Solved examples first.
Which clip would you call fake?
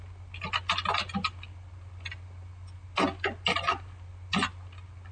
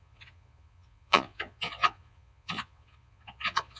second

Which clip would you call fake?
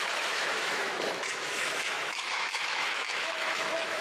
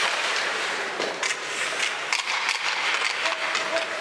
first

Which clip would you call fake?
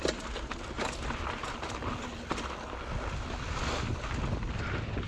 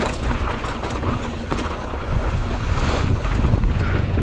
second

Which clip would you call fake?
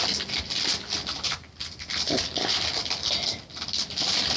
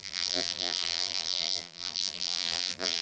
second